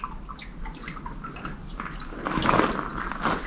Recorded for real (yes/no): yes